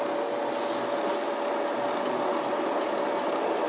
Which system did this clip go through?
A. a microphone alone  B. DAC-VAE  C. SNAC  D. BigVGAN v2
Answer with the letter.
A